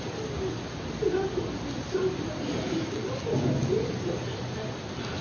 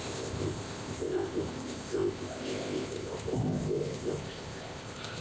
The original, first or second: first